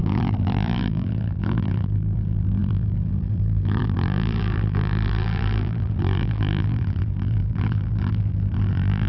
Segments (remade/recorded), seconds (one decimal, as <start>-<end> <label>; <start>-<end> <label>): 0.0-9.1 remade